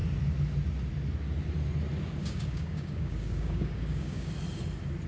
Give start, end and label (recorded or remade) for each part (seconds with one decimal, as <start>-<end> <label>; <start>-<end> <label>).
0.0-2.2 recorded; 2.2-4.3 remade; 4.3-5.1 recorded